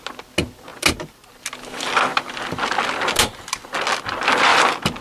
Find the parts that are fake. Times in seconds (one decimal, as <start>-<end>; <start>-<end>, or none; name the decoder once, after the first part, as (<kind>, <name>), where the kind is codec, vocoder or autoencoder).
none